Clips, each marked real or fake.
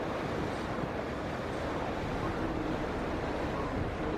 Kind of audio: real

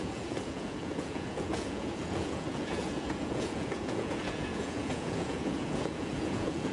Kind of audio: fake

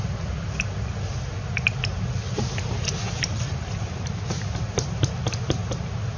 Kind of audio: real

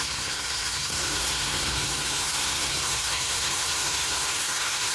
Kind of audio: fake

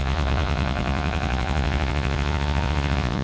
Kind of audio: fake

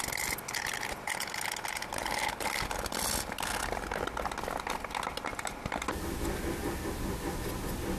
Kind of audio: real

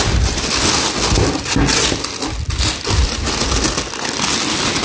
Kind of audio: real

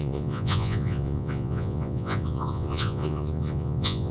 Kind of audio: fake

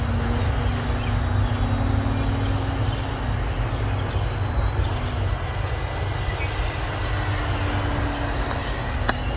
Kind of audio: real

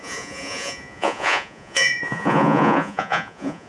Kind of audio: fake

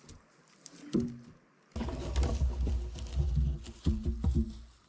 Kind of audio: real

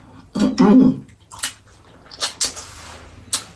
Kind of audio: real